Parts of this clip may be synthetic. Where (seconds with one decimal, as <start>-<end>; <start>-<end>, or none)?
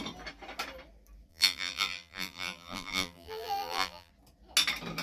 1.3-4.1